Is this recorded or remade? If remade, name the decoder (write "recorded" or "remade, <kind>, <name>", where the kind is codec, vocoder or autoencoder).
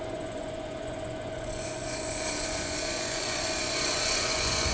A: remade, vocoder, Vocos